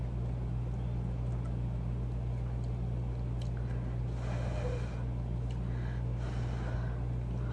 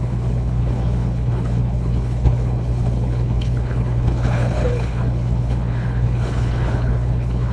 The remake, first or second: second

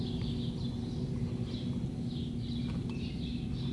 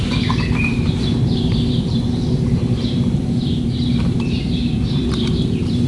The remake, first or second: second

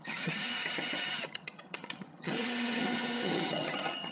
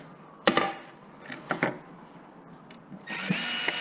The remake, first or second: first